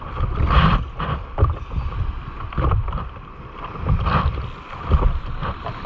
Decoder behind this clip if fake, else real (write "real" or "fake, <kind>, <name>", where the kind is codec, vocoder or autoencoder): real